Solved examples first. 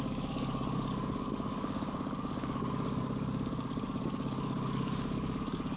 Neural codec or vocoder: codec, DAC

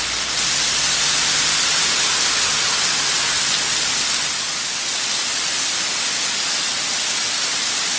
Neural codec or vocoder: none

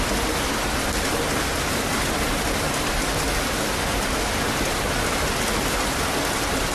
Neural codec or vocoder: none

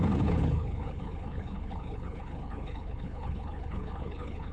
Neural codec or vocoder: codec, HILCodec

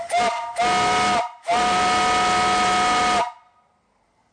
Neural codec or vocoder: none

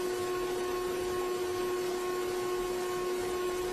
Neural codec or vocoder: none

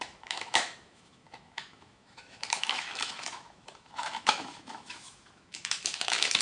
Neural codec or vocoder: autoencoder, DAC-VAE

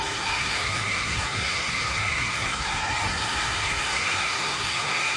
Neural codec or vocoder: codec, SNAC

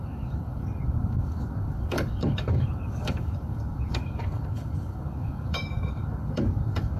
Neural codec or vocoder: codec, DAC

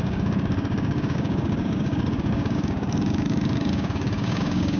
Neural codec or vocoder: codec, DAC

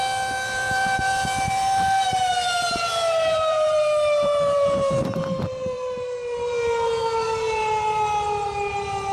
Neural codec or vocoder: vocoder, BigVGAN v2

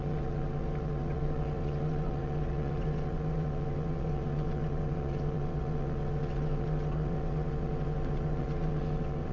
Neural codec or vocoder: vocoder, WaveNeXt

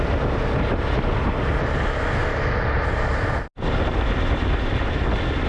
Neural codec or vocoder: none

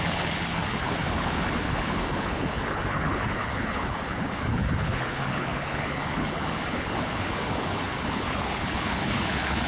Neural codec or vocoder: codec, HILCodec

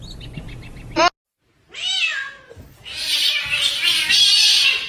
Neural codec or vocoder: none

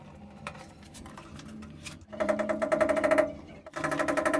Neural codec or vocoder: vocoder, BigVGAN v2